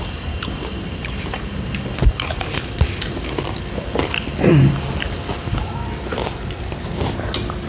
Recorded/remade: remade